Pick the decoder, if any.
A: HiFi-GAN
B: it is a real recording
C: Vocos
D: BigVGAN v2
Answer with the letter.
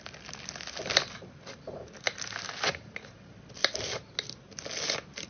B